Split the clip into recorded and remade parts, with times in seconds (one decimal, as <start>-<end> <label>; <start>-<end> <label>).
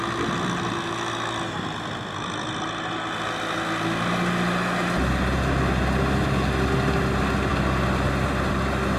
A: 0.0-9.0 recorded